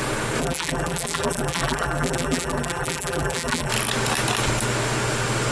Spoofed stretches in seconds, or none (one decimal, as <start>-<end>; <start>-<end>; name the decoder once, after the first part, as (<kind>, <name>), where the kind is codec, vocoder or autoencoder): 0.4-3.7 (vocoder, BigVGAN v2)